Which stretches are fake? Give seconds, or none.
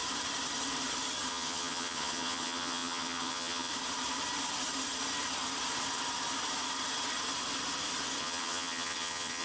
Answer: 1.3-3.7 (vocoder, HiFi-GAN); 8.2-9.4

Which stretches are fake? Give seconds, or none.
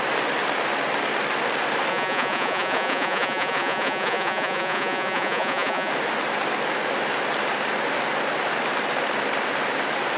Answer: 1.9-5.9 (vocoder, Vocos)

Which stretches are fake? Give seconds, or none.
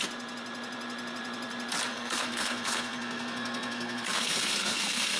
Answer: 1.9-5.2 (codec, SNAC)